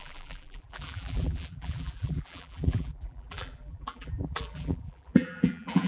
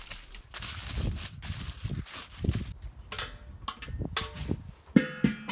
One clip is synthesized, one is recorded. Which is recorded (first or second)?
second